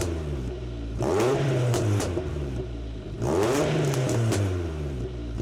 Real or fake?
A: fake